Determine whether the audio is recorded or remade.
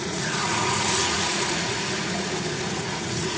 remade